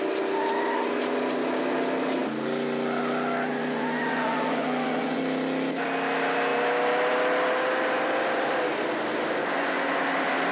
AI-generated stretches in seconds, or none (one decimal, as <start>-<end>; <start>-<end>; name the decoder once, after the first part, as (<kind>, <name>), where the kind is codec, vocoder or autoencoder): 3.5-5.2 (vocoder, Vocos); 9.4-10.0